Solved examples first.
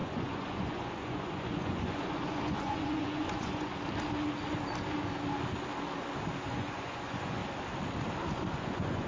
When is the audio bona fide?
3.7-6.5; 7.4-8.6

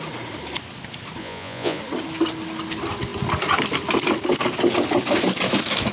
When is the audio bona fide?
0.0-1.2; 1.8-5.9

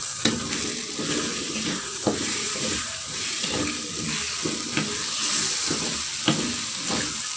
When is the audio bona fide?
0.0-1.4; 3.5-7.4